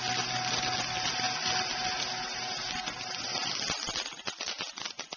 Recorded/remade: recorded